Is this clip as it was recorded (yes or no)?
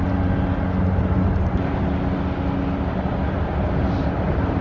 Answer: yes